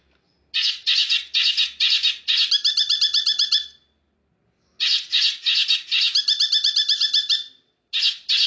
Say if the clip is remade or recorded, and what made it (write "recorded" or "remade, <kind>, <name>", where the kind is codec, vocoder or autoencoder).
recorded